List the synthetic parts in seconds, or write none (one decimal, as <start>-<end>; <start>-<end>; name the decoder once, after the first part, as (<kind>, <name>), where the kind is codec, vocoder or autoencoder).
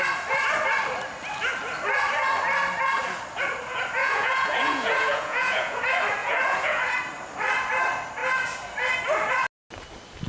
4.0-5.8 (vocoder, Vocos); 6.2-6.8